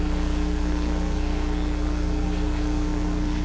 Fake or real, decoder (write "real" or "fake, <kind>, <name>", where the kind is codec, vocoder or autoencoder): fake, codec, SNAC